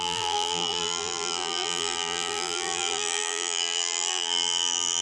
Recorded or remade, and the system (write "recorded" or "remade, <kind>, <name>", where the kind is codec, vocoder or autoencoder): remade, vocoder, BigVGAN v2